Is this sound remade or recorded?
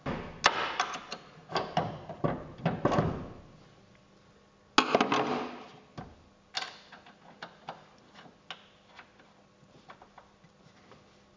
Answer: recorded